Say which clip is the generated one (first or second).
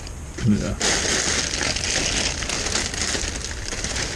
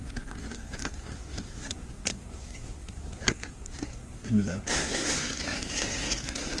second